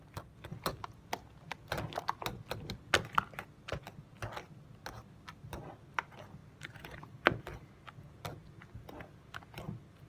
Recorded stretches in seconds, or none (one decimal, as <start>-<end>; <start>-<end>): 0.0-10.1